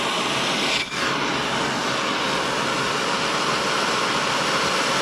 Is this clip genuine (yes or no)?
yes